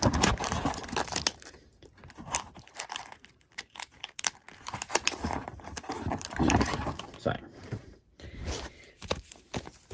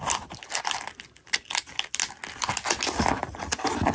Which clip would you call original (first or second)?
second